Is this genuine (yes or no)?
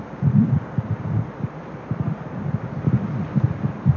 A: yes